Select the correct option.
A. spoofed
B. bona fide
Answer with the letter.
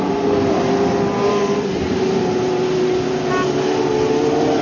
B